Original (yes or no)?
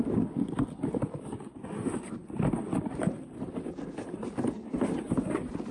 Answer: yes